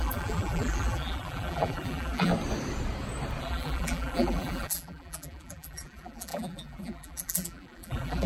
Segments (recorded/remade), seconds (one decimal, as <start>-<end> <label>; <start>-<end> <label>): 0.0-2.3 remade; 2.3-3.4 recorded; 3.4-8.3 remade